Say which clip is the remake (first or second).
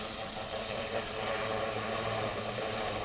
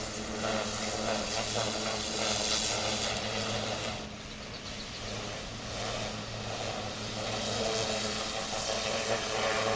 first